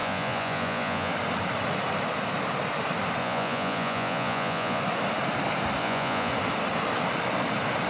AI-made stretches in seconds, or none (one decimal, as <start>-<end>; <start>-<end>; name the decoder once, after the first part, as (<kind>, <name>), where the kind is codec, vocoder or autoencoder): 0.0-1.1 (vocoder, Vocos); 3.2-4.8; 5.8-6.3